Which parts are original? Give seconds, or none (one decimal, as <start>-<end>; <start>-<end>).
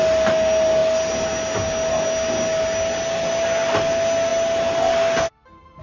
0.0-5.8